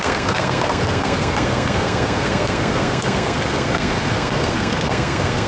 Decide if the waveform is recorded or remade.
remade